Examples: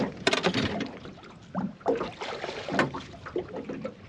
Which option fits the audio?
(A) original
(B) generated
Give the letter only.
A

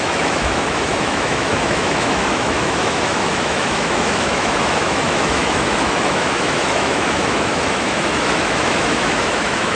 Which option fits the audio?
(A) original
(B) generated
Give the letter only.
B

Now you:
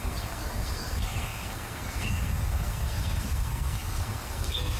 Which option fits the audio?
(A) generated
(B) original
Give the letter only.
A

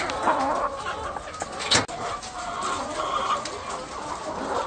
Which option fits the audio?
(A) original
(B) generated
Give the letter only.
A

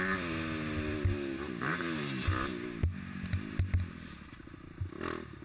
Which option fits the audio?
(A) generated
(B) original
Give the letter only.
B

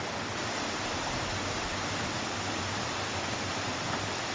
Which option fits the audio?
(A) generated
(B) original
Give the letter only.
B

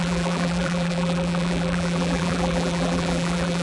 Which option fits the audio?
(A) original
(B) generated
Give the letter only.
B